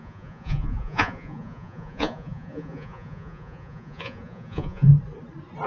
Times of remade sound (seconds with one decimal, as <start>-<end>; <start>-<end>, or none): 0.0-4.9